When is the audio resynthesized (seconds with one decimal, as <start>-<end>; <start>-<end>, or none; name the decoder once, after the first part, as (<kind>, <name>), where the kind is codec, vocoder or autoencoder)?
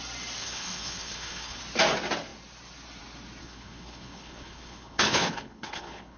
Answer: 0.4-1.6 (codec, HILCodec); 3.4-6.2